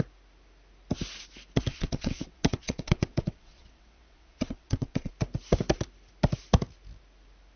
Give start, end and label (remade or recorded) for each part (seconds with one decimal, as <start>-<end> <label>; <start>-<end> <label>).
0.0-1.7 recorded; 1.7-5.1 remade; 5.1-7.6 recorded